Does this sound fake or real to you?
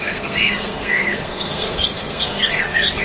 fake